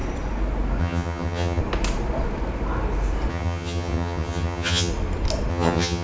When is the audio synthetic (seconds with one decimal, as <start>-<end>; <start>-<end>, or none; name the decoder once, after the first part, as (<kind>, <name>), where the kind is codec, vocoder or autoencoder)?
0.8-1.6 (vocoder, HiFi-GAN); 3.3-4.9; 5.5-6.0

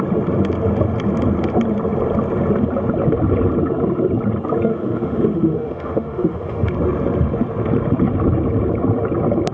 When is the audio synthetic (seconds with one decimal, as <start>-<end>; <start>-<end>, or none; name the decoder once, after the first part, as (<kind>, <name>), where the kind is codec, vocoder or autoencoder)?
4.7-6.7 (autoencoder, DAC-VAE)

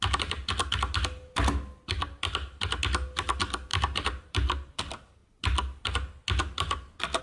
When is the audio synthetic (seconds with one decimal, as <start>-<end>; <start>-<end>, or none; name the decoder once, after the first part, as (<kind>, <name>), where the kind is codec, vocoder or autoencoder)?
3.7-4.8 (vocoder, BigVGAN v2)

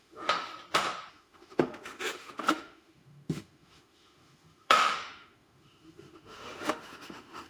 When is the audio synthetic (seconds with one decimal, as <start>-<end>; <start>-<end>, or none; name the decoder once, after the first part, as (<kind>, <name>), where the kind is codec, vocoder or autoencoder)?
0.0-0.5 (autoencoder, DAC-VAE); 1.1-7.5

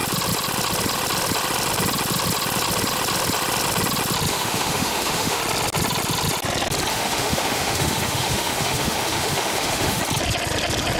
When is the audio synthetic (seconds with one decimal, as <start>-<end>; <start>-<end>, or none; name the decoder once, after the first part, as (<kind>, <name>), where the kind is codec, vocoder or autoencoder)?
4.3-5.4 (autoencoder, DAC-VAE); 6.9-10.0

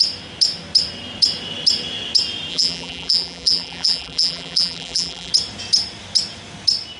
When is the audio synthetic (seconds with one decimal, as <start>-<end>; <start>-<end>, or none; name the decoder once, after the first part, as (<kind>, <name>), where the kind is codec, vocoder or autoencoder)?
2.5-5.3 (vocoder, BigVGAN v2)

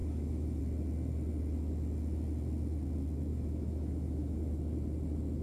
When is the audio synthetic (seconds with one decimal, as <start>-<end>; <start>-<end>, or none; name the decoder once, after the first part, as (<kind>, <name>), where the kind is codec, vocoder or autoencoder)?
0.0-0.6 (autoencoder, DAC-VAE); 3.3-4.5

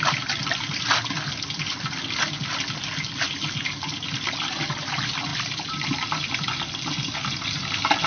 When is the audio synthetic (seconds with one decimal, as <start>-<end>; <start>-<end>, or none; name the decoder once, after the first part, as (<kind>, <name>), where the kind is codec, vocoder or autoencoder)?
none